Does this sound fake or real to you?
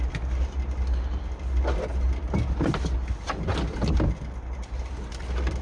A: real